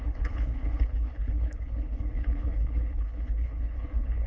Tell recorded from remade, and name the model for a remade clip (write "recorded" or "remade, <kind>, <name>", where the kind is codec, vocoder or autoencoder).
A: remade, codec, HILCodec